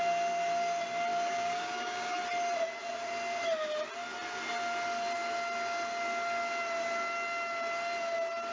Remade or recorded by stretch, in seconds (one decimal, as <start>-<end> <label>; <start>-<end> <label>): 0.0-1.1 recorded; 1.1-2.2 remade; 2.2-8.5 recorded